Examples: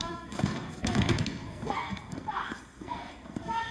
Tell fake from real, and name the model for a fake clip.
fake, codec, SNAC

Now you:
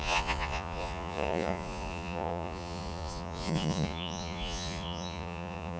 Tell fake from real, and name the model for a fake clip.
fake, vocoder, Vocos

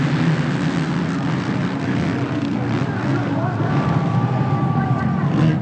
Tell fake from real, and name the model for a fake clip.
real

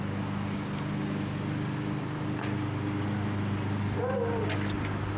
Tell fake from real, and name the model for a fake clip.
real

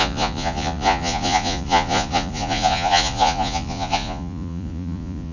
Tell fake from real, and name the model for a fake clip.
fake, vocoder, Vocos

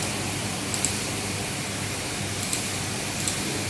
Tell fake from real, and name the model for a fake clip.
real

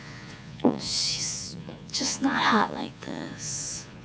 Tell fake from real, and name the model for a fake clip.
fake, vocoder, Vocos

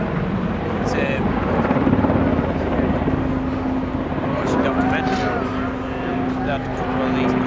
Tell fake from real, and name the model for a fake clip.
real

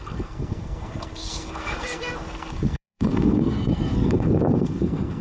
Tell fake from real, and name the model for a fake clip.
fake, codec, SNAC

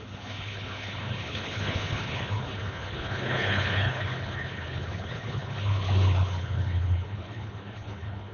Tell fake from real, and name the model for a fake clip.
fake, codec, HILCodec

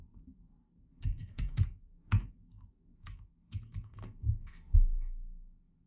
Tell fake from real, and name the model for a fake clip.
fake, codec, SNAC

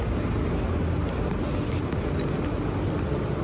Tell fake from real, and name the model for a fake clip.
real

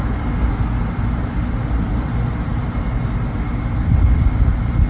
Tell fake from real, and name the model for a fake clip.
real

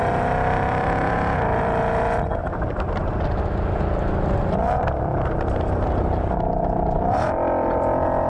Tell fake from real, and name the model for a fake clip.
fake, vocoder, BigVGAN v2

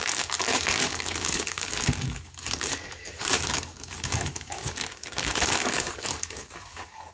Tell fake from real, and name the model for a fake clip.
fake, codec, DAC